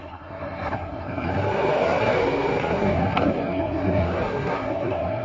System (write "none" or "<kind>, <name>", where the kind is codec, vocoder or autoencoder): codec, SNAC